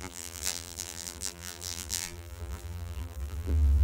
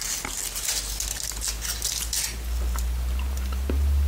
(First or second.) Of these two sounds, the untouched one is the second